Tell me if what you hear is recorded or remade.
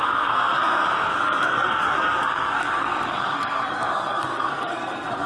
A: remade